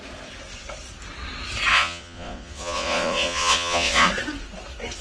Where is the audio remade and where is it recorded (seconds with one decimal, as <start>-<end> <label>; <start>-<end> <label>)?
0.0-1.7 recorded; 1.7-4.1 remade; 4.1-5.0 recorded